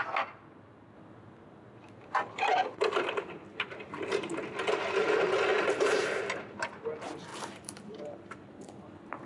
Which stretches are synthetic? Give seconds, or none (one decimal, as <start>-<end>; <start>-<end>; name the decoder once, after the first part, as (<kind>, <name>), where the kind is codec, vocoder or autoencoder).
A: 2.5-3.9 (vocoder, BigVGAN v2); 5.5-6.2; 7.3-8.5